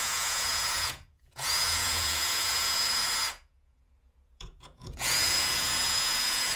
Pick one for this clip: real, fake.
fake